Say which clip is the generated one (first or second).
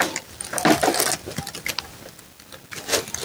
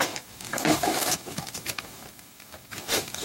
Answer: second